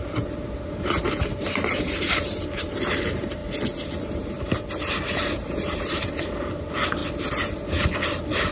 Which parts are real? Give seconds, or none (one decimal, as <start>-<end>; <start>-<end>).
3.4-4.0; 7.0-7.8